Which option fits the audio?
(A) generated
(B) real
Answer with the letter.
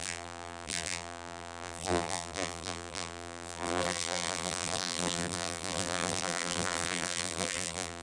A